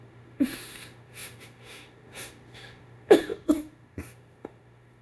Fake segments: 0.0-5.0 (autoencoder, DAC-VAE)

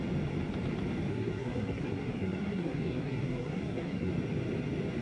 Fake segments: 1.1-4.1 (codec, SNAC)

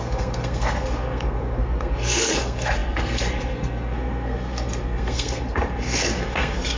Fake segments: 0.0-6.8 (codec, SNAC)

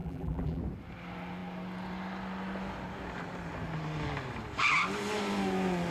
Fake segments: 0.0-0.6 (vocoder, BigVGAN v2)

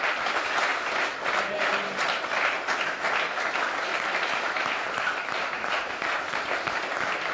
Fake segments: 3.9-6.2 (vocoder, BigVGAN v2)